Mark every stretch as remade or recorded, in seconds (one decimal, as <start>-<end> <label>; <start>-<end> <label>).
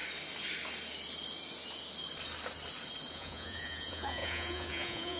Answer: 0.0-3.1 recorded; 3.1-5.2 remade